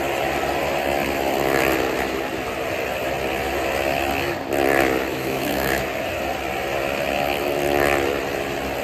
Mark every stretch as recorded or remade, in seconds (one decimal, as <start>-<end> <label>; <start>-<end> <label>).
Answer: 0.0-5.1 recorded; 5.1-5.8 remade; 5.8-8.8 recorded